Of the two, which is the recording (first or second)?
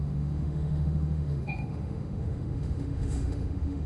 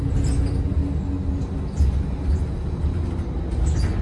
second